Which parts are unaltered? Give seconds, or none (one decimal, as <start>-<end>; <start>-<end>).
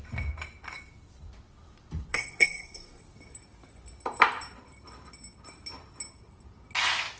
0.0-2.1; 3.0-7.2